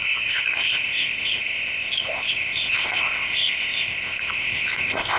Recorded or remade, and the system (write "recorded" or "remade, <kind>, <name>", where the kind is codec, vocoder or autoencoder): remade, codec, ZipCodec